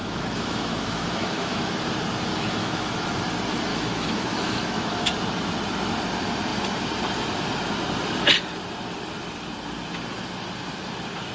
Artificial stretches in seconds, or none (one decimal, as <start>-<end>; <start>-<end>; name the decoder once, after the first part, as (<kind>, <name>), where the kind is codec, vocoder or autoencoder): 0.0-1.7 (autoencoder, DAC-VAE); 2.3-3.1; 3.7-5.1